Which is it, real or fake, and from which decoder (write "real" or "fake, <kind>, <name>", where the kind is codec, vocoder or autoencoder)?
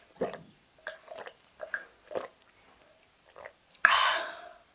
real